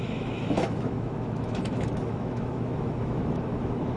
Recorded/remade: remade